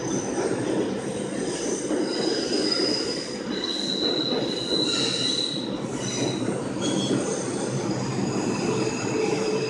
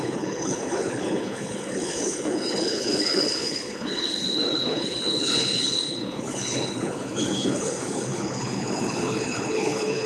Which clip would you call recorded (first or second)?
first